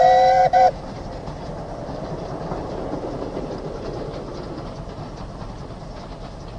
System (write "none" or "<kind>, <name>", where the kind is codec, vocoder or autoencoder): none